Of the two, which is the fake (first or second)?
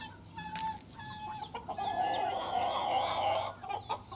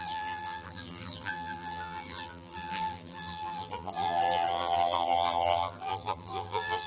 second